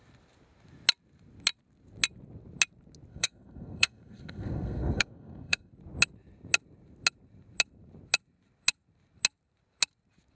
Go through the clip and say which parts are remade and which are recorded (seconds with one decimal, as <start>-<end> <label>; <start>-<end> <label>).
0.0-3.1 recorded; 3.1-5.7 remade; 5.7-10.3 recorded